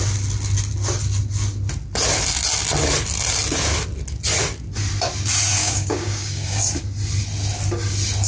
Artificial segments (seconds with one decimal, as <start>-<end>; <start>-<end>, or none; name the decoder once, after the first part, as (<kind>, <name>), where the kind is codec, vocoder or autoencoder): 5.6-6.6 (codec, DAC)